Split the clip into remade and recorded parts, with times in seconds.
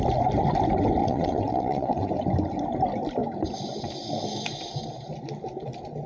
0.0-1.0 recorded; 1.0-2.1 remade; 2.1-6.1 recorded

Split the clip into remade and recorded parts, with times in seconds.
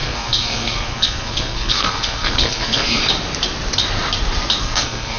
0.0-3.0 remade; 3.0-4.6 recorded; 4.6-5.2 remade